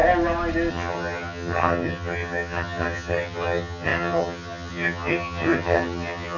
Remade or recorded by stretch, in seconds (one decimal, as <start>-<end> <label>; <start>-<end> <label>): 0.0-0.7 recorded; 0.7-6.4 remade